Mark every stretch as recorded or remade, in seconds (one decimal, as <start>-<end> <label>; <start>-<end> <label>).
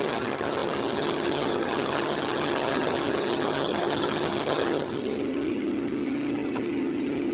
0.0-7.3 remade